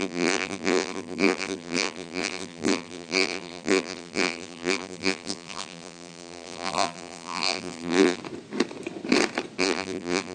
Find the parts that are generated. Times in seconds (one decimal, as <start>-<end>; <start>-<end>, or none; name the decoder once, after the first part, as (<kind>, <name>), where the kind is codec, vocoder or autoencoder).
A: 0.0-8.2 (vocoder, BigVGAN v2); 9.6-10.3